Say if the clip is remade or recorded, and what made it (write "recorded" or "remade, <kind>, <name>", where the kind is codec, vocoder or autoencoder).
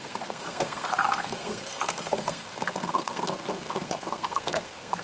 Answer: remade, codec, SNAC